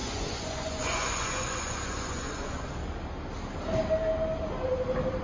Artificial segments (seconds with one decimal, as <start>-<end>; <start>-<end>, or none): 0.0-2.7